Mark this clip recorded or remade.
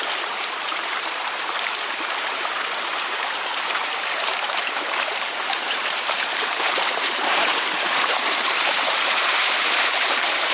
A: remade